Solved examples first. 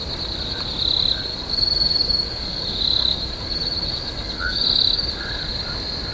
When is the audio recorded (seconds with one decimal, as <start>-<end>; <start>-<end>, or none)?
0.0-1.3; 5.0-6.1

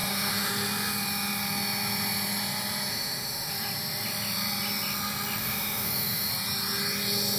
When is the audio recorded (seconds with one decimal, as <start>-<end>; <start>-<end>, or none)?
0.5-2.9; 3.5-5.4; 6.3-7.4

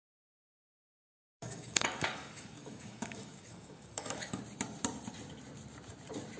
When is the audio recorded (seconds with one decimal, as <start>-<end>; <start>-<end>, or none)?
0.0-0.6; 4.4-6.4

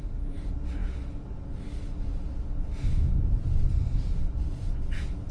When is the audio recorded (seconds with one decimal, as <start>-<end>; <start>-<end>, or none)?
0.0-5.3

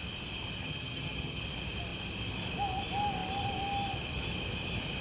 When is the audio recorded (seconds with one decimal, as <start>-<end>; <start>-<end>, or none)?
0.0-0.6; 1.4-5.0